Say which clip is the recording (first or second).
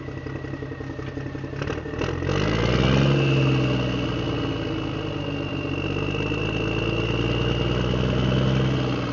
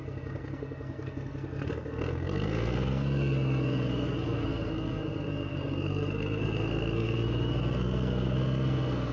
first